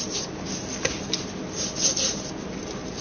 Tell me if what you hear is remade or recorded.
recorded